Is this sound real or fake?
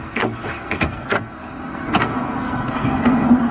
fake